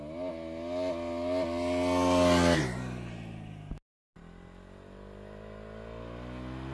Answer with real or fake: real